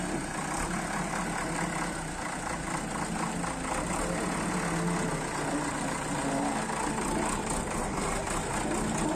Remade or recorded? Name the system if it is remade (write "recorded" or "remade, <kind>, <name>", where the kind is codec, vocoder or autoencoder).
recorded